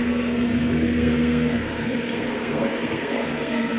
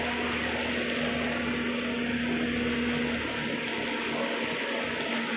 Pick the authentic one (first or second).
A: second